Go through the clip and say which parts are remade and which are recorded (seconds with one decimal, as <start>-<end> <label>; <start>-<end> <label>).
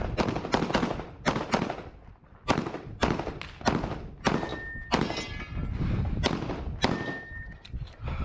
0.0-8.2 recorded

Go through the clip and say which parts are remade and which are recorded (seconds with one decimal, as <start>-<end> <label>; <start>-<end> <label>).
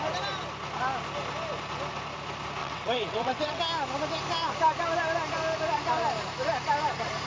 0.0-2.6 recorded; 2.6-3.6 remade; 3.6-7.3 recorded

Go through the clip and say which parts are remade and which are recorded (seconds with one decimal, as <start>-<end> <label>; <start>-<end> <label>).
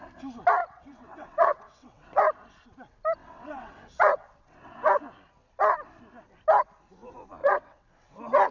0.0-0.6 recorded; 0.6-2.2 remade; 2.2-3.2 recorded; 3.2-4.9 remade; 4.9-7.4 recorded; 7.4-8.5 remade